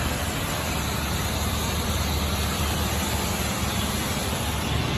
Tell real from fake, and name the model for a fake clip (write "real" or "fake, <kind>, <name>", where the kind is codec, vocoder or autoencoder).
real